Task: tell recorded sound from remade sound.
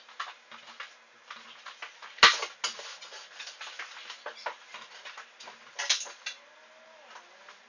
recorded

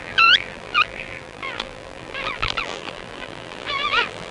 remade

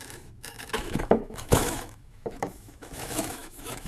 remade